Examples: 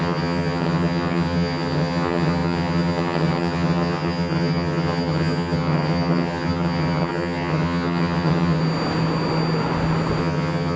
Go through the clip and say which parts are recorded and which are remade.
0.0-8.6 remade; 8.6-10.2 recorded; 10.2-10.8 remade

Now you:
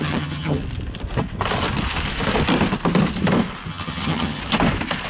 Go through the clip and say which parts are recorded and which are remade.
0.0-0.6 remade; 0.6-3.7 recorded; 3.7-4.4 remade; 4.4-5.1 recorded

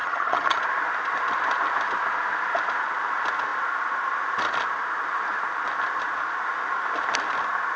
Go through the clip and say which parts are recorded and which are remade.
0.0-0.6 remade; 0.6-7.8 recorded

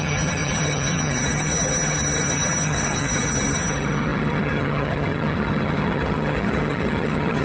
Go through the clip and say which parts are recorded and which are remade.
0.0-7.4 remade

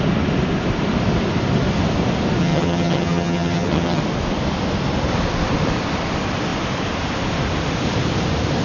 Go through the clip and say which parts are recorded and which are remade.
0.0-2.4 recorded; 2.4-4.0 remade; 4.0-8.6 recorded

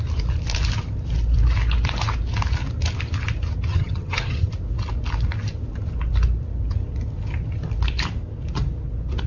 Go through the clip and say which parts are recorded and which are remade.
0.0-3.7 recorded; 3.7-4.5 remade; 4.5-9.3 recorded